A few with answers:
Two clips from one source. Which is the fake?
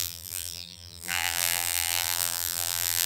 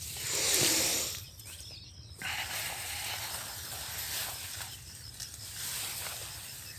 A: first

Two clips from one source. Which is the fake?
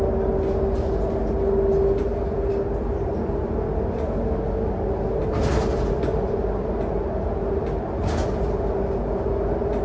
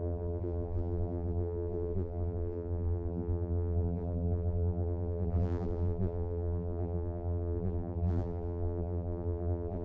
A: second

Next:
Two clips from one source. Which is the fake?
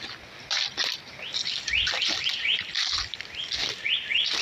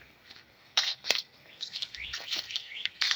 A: second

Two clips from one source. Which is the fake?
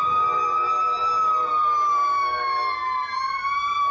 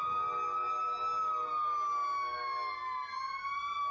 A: first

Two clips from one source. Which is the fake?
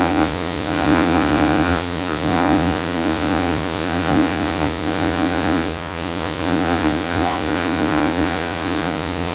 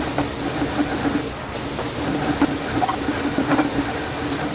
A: first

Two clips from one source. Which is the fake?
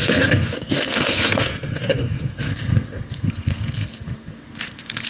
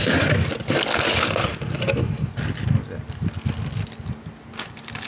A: first